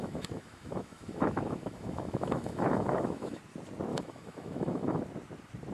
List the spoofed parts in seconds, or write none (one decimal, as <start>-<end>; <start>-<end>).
0.0-3.4; 3.9-5.0

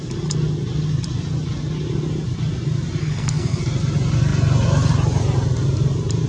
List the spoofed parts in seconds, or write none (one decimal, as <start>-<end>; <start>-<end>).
3.0-3.6

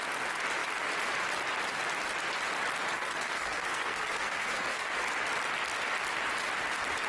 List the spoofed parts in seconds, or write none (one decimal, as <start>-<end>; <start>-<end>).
3.0-4.9

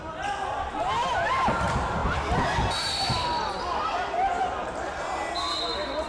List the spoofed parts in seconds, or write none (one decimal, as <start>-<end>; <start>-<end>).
none

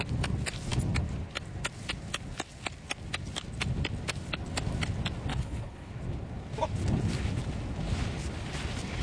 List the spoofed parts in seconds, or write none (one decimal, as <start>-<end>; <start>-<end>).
5.3-5.9

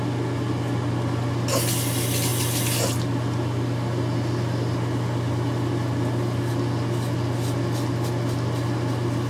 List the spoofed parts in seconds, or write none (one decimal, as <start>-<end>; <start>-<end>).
none

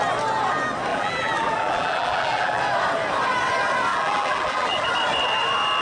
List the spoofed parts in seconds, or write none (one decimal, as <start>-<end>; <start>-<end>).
0.9-2.6; 3.9-4.9